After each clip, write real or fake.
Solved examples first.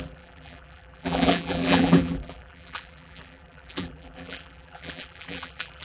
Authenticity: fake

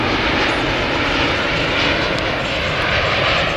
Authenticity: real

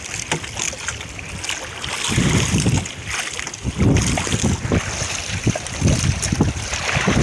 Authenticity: real